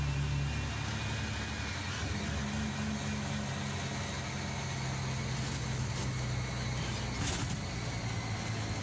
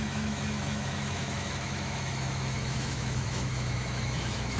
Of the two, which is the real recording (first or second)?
first